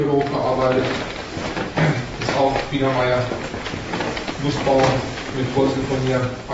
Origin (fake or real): real